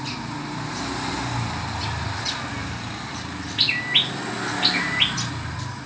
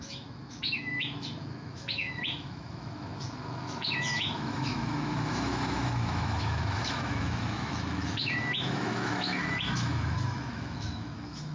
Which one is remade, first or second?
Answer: second